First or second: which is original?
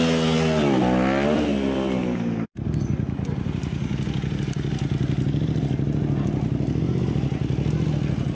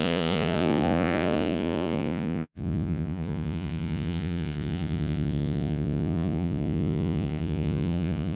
first